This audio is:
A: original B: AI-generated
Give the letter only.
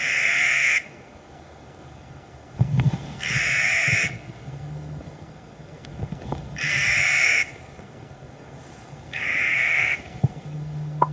B